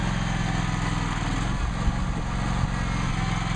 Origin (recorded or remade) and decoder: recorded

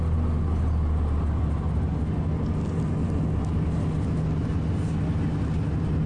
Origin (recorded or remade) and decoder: recorded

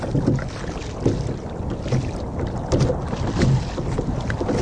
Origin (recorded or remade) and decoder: recorded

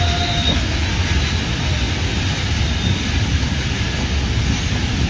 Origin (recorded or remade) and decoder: recorded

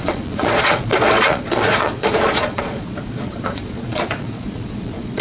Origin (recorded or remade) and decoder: remade, vocoder, Vocos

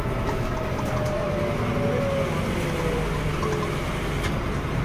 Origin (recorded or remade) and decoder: recorded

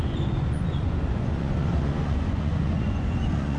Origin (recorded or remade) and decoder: remade, vocoder, Vocos